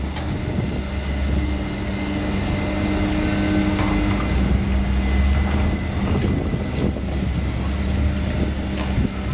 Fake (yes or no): no